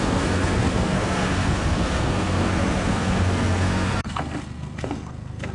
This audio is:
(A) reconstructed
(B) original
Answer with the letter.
A